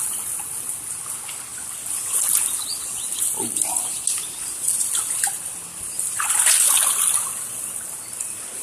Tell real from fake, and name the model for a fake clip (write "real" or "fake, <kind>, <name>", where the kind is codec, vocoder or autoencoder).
real